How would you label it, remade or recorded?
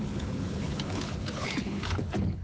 remade